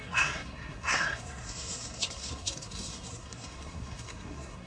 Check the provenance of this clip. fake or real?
fake